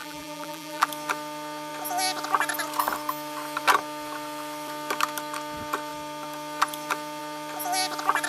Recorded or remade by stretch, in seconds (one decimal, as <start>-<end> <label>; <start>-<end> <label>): 0.0-0.9 remade; 0.9-8.3 recorded